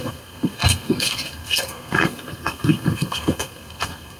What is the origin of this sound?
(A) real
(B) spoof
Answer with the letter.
B